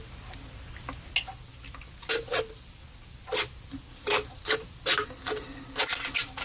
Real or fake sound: real